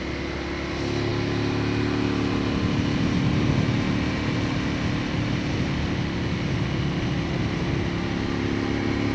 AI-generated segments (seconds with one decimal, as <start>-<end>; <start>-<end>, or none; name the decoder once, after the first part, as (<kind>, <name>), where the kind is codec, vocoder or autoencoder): none